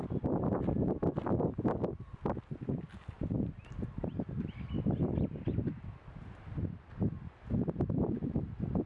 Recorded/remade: recorded